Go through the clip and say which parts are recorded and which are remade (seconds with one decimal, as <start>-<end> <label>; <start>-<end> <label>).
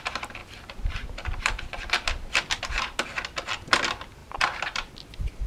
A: 0.0-0.4 recorded; 0.4-2.6 remade; 2.6-4.2 recorded; 4.2-4.9 remade; 4.9-5.5 recorded